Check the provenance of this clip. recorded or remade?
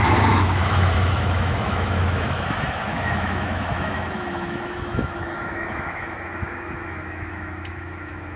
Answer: remade